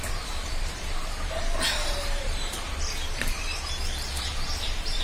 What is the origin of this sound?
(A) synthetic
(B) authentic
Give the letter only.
A